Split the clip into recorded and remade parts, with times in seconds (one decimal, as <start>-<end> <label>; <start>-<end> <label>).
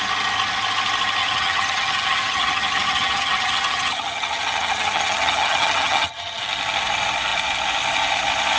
0.0-1.2 recorded; 1.2-6.4 remade; 6.4-8.6 recorded